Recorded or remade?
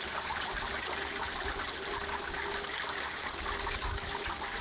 recorded